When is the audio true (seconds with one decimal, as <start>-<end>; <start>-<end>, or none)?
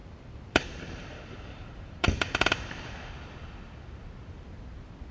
3.1-5.1